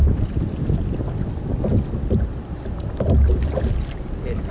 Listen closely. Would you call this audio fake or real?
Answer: real